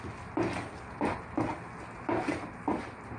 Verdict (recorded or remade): recorded